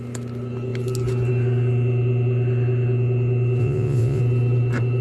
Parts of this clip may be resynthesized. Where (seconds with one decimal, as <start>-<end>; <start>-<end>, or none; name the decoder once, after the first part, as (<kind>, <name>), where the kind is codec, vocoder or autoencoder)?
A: 3.6-4.2 (vocoder, Vocos)